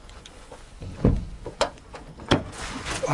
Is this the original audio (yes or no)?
no